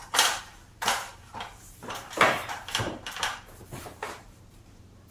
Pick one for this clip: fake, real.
fake